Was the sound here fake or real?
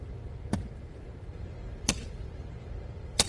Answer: fake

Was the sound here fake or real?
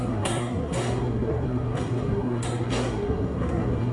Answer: fake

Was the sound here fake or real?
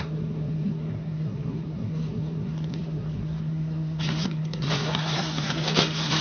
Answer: fake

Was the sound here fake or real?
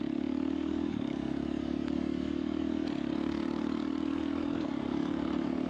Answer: fake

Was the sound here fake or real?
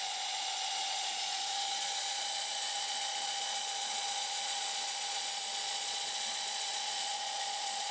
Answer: fake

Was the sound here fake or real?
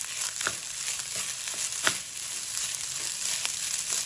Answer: real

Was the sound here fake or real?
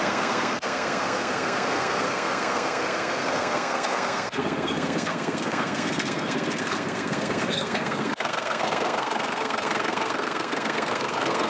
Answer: fake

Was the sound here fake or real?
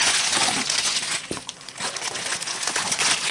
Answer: fake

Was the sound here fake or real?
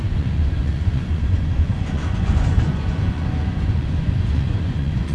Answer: fake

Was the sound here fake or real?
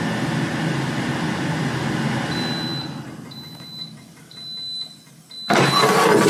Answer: real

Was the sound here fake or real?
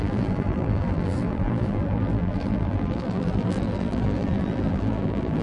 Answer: fake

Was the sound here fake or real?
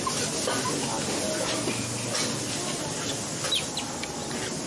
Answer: real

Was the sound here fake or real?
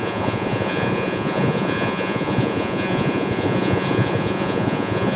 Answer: fake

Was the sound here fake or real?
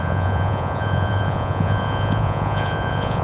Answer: fake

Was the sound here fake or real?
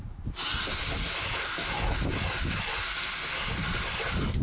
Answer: real